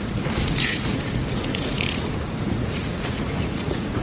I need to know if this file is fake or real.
fake